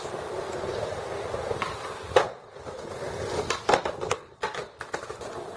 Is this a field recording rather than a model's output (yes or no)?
yes